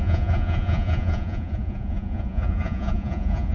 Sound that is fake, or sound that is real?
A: fake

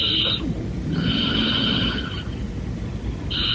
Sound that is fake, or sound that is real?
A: real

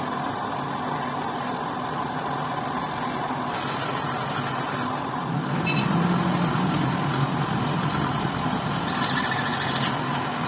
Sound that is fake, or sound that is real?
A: real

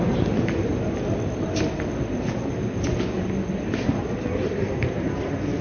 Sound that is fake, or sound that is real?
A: real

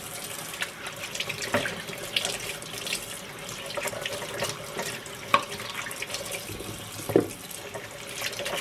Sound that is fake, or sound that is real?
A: real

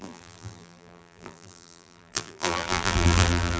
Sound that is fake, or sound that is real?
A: fake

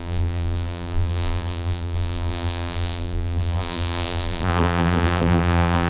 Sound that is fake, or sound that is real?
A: fake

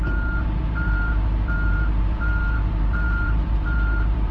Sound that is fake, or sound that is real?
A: fake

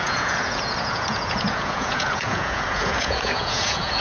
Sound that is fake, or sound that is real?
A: fake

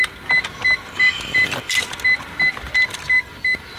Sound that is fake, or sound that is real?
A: real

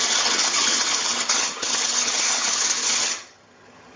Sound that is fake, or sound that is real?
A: fake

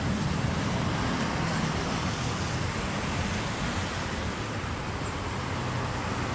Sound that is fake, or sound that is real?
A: real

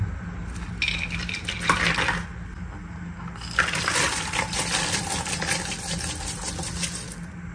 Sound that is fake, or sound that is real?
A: real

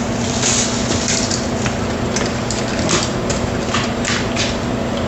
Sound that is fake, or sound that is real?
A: real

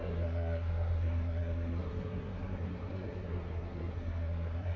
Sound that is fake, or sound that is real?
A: fake